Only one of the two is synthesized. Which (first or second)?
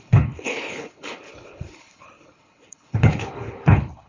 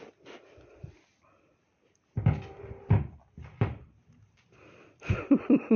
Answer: first